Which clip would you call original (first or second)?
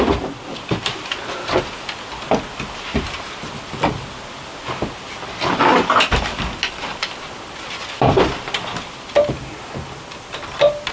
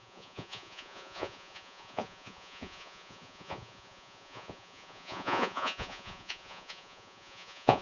first